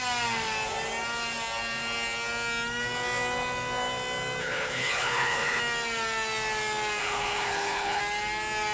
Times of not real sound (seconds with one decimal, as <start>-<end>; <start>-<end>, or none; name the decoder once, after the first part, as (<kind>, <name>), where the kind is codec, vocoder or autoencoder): 4.4-5.6 (codec, HILCodec); 7.0-8.0